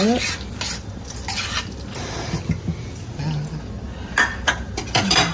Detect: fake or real real